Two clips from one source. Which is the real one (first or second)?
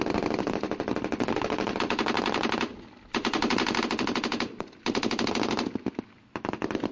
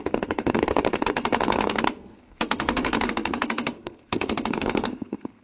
first